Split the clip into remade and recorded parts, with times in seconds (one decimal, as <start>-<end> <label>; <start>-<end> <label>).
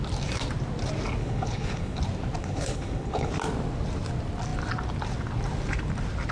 0.0-1.2 recorded; 1.2-2.0 remade; 2.0-2.4 recorded; 2.4-3.3 remade; 3.3-6.3 recorded